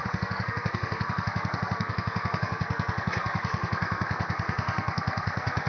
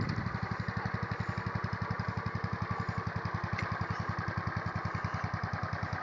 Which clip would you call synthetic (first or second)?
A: first